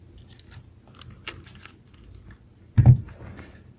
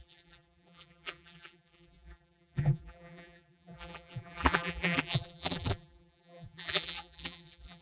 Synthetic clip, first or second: second